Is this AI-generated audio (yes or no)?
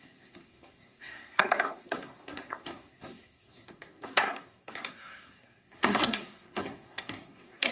yes